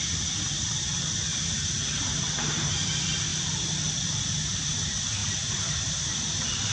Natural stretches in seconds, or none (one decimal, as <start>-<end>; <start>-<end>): 0.0-6.7